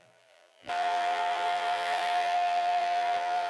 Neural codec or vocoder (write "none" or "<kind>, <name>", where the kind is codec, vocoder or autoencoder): vocoder, BigVGAN v2